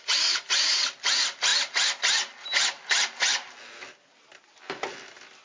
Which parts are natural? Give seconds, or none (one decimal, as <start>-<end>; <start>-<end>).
0.0-5.4

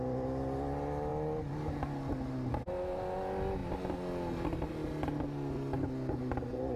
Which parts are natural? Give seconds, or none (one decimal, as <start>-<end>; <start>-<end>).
0.0-6.8

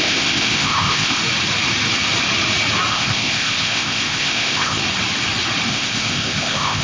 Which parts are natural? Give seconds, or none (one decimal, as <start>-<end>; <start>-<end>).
1.2-2.9; 4.8-5.7